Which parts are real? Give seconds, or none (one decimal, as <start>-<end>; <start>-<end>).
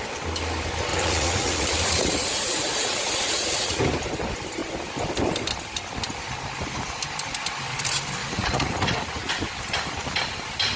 0.0-0.9; 3.8-8.2; 9.3-10.8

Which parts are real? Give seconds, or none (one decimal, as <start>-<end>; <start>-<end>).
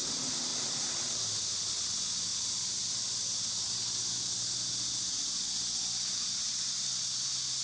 0.0-7.6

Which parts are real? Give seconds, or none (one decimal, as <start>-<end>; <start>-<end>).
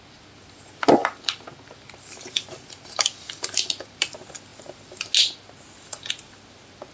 0.0-1.0; 3.7-6.9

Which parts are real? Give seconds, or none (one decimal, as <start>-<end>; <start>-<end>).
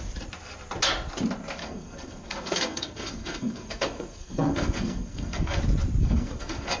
0.0-1.6; 5.6-6.0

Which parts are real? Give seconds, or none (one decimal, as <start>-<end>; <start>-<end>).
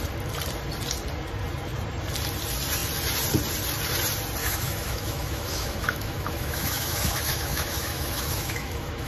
0.0-4.4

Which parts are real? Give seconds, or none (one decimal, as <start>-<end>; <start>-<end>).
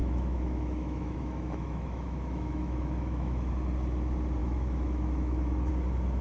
3.5-4.4; 5.7-6.2